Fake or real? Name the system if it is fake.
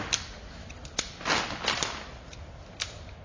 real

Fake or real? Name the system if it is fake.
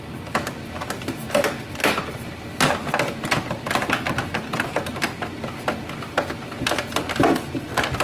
real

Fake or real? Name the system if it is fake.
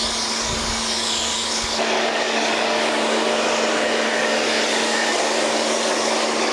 fake, codec, DAC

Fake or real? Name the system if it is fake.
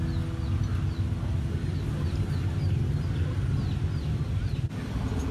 real